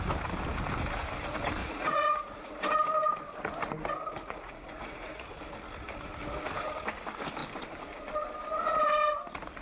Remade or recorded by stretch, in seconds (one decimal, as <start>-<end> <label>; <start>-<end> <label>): 0.0-1.6 recorded; 1.6-2.5 remade; 2.5-4.2 recorded; 4.2-5.3 remade; 5.3-9.6 recorded